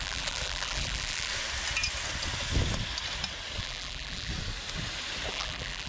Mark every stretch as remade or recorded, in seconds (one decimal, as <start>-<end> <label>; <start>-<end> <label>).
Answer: 0.0-1.3 remade; 1.3-3.6 recorded; 3.6-4.3 remade; 4.3-5.3 recorded; 5.3-5.9 remade